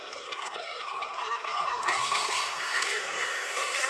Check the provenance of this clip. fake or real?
fake